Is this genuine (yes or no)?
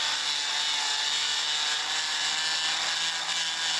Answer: yes